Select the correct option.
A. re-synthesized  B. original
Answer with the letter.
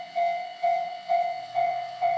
A